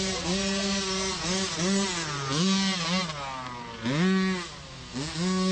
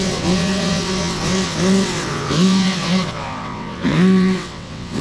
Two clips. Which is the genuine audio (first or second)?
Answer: first